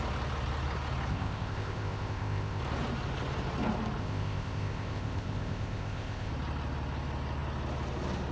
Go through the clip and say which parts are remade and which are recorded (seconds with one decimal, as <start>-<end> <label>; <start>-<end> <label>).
0.0-1.1 recorded; 1.1-2.6 remade; 2.6-4.0 recorded; 4.0-6.3 remade; 6.3-8.3 recorded